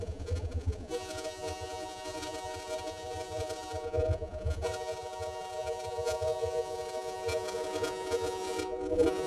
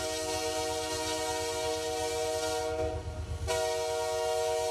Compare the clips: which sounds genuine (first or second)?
second